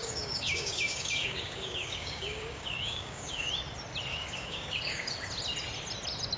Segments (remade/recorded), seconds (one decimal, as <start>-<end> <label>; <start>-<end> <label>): 0.0-3.5 remade; 3.5-4.1 recorded; 4.1-5.1 remade; 5.1-6.4 recorded